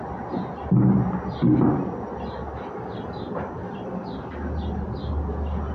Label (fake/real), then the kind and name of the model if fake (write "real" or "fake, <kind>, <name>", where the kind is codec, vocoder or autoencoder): real